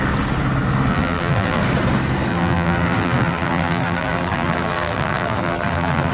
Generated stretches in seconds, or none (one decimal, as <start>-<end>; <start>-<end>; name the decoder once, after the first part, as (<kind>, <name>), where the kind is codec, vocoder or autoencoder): 0.9-1.6 (vocoder, BigVGAN v2); 2.3-6.1